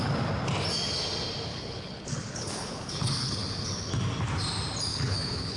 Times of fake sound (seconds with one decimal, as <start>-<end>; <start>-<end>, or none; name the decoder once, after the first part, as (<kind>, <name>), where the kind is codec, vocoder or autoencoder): 1.5-3.9 (codec, HILCodec); 4.9-5.6